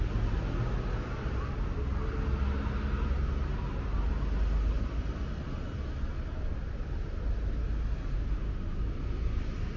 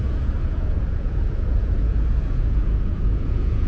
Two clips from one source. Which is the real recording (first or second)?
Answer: first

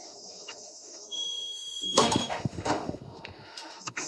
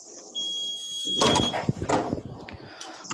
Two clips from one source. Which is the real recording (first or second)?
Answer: second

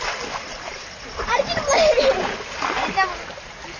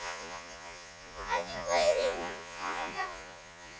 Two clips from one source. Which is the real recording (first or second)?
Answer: first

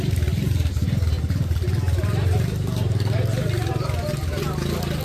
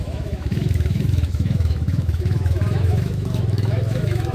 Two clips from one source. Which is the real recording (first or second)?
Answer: first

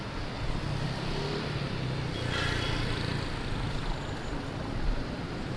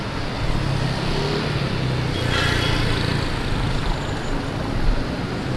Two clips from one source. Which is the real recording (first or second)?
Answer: second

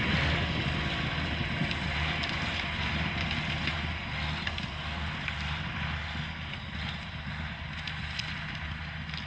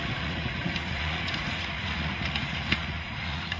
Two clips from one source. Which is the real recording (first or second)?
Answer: first